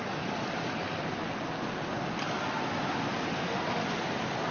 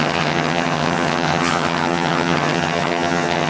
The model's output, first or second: second